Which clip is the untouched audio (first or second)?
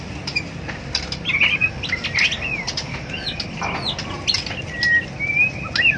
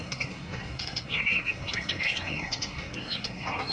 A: first